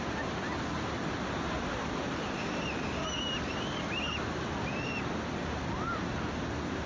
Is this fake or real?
real